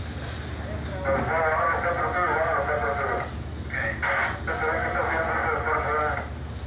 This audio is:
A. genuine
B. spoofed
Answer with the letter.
A